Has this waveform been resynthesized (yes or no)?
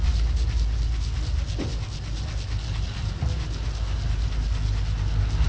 no